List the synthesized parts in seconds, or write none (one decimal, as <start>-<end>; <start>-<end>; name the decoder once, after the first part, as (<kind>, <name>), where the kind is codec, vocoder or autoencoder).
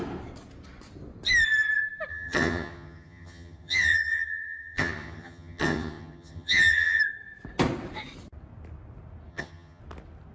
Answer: 2.1-7.0 (vocoder, HiFi-GAN); 9.3-9.8